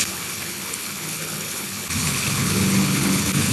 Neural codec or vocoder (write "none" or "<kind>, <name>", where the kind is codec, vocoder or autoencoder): codec, HILCodec